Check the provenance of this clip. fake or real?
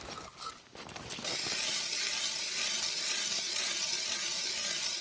real